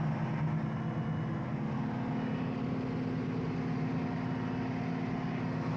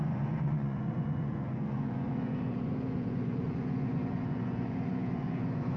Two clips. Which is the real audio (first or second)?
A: first